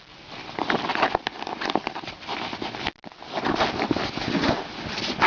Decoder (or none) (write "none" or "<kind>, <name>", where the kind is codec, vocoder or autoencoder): none